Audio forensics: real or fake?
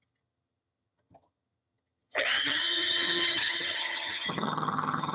fake